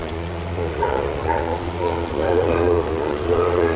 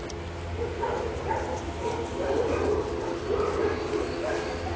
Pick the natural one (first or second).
second